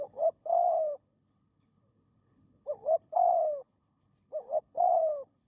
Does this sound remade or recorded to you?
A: remade